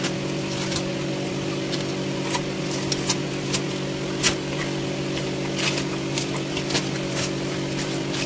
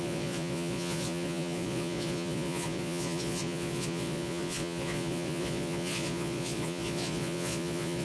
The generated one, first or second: second